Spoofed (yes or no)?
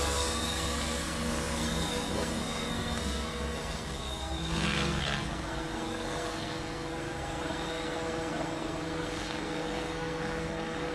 yes